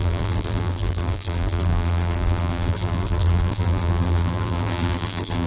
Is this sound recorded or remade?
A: remade